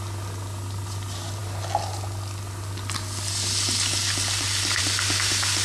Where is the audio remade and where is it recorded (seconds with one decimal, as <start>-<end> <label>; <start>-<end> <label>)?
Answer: 0.0-5.6 recorded